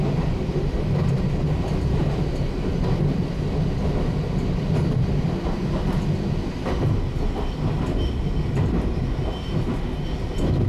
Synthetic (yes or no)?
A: no